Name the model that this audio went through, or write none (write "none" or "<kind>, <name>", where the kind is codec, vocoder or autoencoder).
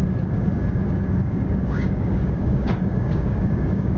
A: codec, DAC